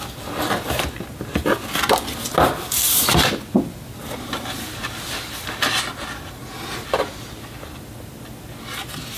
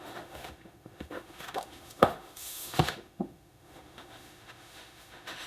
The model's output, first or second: second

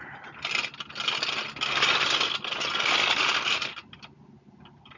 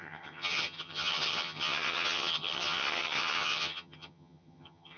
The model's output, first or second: second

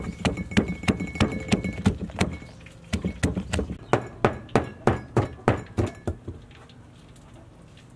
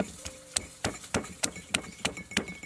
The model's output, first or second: second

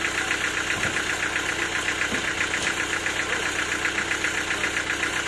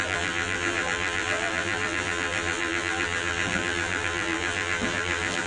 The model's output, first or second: second